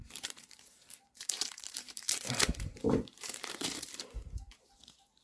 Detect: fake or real fake